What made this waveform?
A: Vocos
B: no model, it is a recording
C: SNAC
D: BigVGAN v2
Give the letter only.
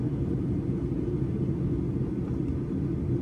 B